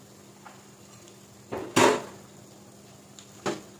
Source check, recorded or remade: recorded